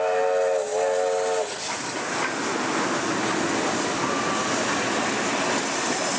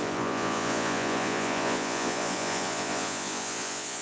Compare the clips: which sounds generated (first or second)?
second